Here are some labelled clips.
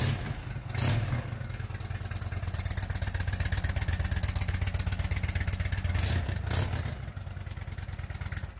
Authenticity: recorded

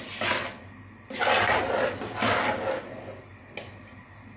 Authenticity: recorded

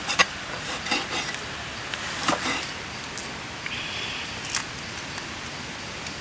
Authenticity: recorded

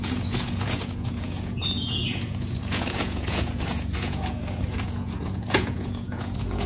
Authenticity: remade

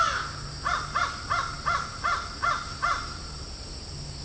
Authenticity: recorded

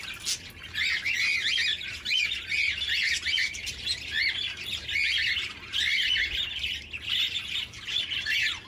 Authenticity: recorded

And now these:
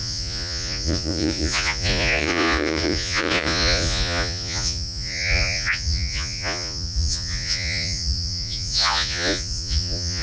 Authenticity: remade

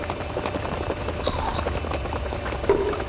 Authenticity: recorded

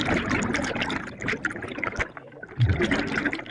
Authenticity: recorded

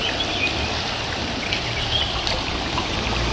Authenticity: recorded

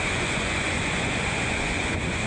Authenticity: remade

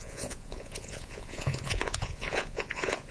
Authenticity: remade